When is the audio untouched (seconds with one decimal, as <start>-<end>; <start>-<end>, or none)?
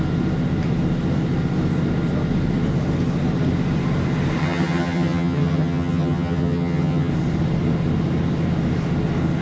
0.0-4.4; 7.1-9.4